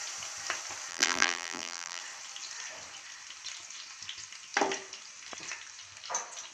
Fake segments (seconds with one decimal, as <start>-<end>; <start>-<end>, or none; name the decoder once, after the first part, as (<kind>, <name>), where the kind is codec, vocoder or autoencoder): 0.9-2.0 (vocoder, BigVGAN v2)